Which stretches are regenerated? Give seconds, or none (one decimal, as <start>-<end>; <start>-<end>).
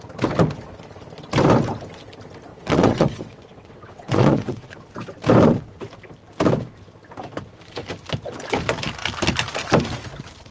2.5-4.9